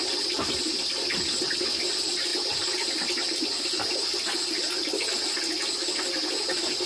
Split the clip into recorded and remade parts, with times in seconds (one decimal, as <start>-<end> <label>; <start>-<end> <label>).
0.0-6.9 recorded